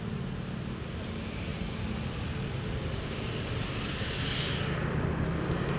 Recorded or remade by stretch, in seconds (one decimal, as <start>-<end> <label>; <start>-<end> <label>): 0.0-5.8 recorded